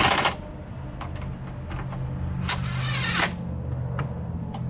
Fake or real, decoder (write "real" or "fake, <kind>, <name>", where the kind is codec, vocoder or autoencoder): real